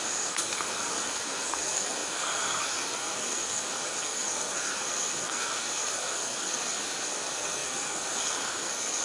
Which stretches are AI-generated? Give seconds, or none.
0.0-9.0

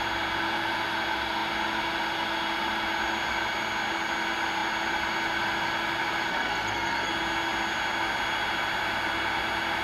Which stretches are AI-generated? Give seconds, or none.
6.3-7.1

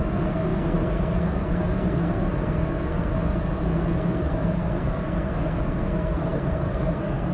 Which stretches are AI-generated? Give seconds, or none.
0.0-7.3

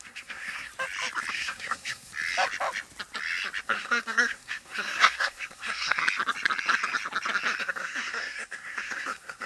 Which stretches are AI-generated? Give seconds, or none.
0.0-0.7; 1.3-2.1; 3.6-6.0; 7.6-9.5

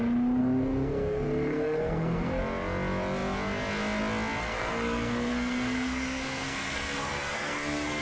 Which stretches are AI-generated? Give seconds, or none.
0.4-2.4; 4.4-8.0